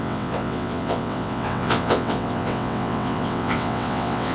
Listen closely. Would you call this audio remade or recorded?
remade